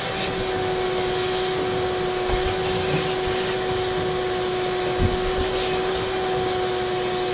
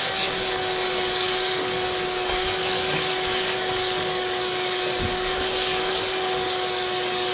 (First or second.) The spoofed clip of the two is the second